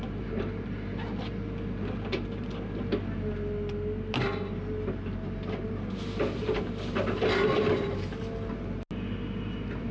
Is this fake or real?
real